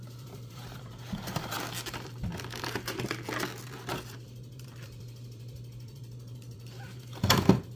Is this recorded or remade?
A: remade